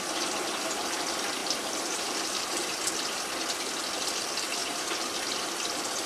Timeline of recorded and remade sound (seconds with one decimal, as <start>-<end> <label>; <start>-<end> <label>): 0.0-1.4 recorded; 1.4-2.9 remade; 2.9-4.6 recorded; 4.6-5.2 remade; 5.2-6.1 recorded